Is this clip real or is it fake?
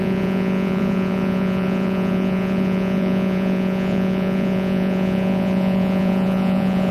fake